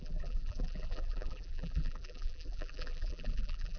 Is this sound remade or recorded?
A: remade